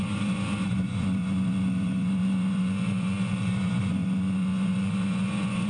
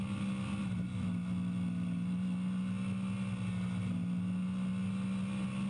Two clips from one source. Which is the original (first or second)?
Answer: second